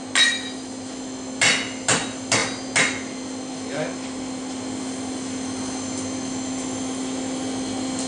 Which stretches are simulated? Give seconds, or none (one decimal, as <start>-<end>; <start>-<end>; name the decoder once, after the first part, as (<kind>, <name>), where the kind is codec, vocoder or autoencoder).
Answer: none